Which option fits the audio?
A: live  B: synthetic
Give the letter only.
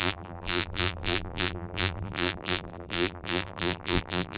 B